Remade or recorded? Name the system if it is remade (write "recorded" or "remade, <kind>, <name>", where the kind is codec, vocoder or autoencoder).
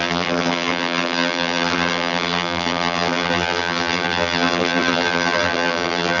remade, vocoder, BigVGAN v2